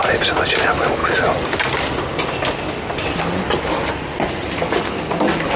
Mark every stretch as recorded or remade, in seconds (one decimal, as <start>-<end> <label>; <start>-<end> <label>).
0.0-1.0 recorded; 1.0-2.3 remade; 2.3-5.6 recorded